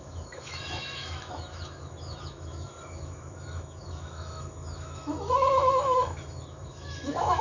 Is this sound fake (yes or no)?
yes